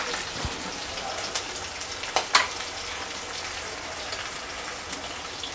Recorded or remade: recorded